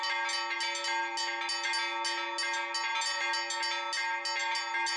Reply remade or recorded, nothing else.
recorded